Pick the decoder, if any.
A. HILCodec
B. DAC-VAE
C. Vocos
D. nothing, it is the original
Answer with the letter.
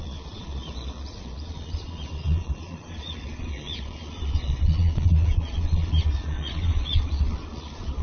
C